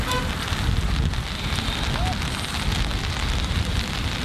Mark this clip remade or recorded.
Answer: recorded